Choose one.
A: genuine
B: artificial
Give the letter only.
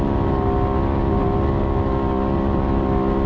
A